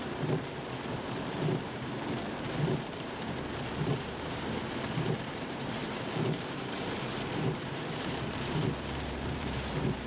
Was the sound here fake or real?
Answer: fake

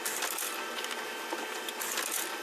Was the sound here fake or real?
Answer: real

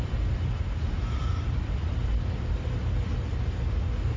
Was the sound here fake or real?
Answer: fake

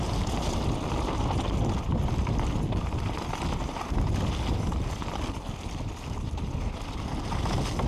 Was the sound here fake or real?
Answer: real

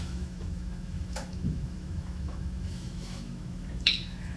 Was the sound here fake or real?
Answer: fake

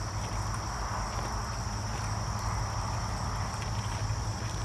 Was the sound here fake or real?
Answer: real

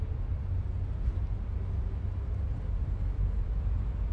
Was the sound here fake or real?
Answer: real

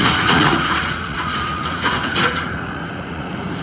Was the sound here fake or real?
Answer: fake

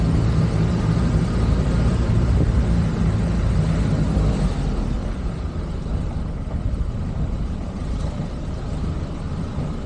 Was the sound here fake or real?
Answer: fake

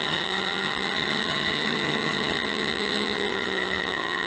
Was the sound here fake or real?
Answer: fake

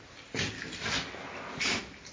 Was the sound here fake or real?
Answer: real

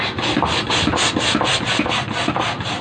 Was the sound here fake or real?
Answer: real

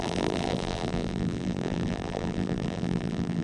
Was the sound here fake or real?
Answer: fake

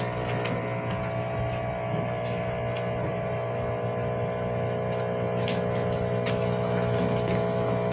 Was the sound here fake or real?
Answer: real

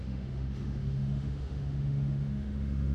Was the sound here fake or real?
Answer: fake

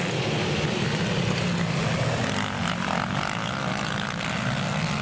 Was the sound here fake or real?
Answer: real